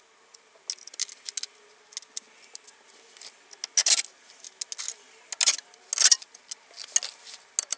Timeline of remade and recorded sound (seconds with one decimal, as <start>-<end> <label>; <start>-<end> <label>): 0.0-7.8 recorded